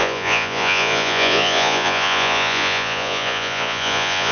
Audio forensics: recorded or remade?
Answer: remade